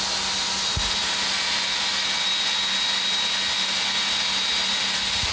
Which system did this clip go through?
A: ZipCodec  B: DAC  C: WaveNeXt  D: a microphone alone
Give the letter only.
D